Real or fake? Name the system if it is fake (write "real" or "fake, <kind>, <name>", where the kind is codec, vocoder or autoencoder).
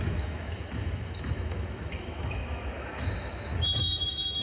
fake, autoencoder, DAC-VAE